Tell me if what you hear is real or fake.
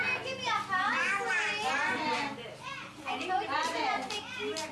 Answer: real